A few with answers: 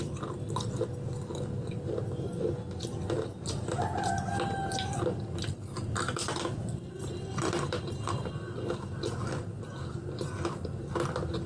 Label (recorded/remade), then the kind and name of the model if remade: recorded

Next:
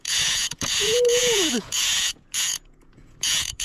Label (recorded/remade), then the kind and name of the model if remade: remade, vocoder, Vocos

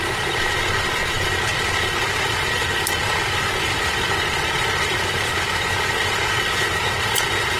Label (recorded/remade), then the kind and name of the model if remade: recorded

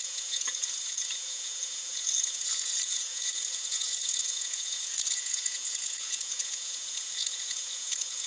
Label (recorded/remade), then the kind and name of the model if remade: remade, vocoder, Vocos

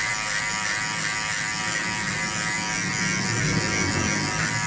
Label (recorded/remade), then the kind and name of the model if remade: recorded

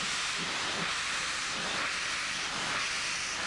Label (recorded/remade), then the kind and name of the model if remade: recorded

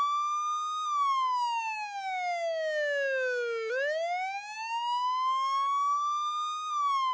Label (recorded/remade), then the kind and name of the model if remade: recorded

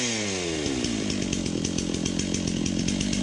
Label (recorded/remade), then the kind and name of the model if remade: recorded